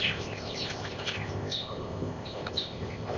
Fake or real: fake